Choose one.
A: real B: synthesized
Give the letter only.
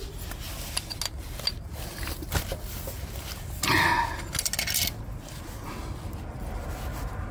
A